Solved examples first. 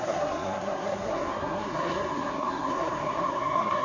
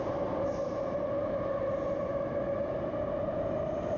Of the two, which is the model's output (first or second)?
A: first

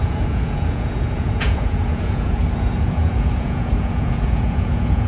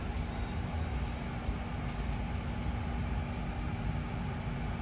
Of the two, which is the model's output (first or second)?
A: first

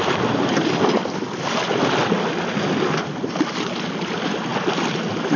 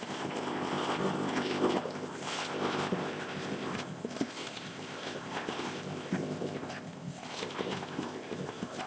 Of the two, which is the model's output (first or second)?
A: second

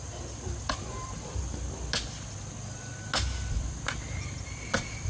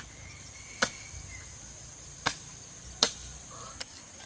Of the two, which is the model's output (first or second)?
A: second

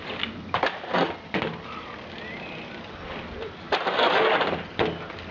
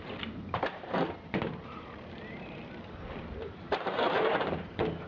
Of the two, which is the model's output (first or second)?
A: second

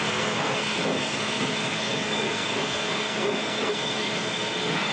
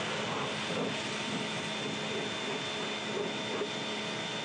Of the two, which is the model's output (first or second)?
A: first